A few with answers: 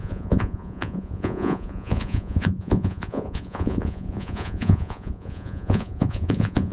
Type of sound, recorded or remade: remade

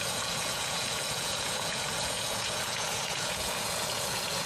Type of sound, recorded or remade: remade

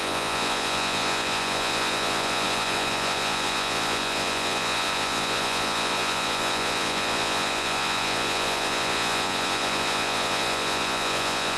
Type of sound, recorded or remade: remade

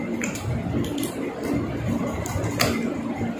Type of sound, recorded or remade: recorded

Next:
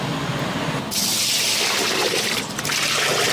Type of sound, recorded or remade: recorded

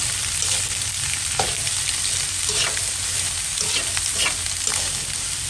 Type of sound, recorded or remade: recorded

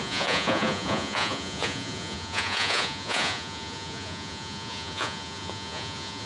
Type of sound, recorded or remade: remade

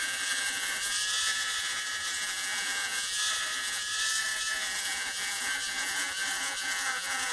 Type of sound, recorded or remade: remade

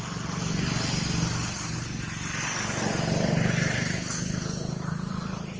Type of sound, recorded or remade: recorded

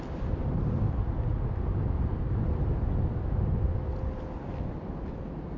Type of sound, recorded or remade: recorded